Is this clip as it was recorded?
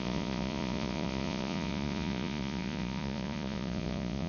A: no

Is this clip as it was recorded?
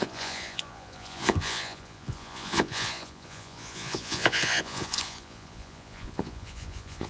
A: no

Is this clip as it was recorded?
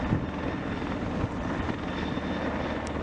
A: yes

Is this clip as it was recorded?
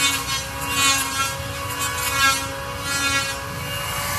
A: yes